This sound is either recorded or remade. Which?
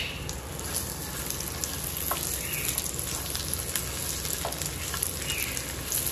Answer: recorded